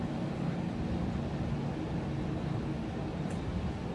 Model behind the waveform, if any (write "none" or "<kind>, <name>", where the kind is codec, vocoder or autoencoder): none